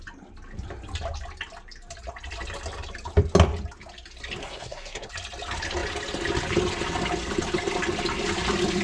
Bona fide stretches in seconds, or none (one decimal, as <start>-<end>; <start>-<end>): 0.0-4.4; 5.1-8.8